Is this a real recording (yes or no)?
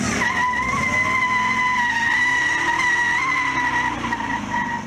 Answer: yes